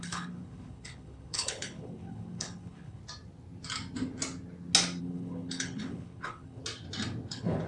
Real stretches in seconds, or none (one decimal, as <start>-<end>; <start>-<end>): 3.0-5.0; 6.6-7.3